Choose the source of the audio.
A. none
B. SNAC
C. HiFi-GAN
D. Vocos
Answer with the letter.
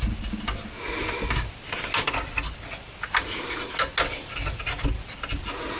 A